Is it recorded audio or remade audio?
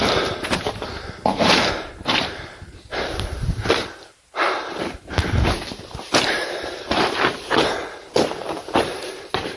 remade